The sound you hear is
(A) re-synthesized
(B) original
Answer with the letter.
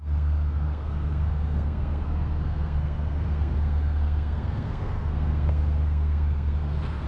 A